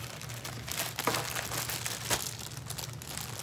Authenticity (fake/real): real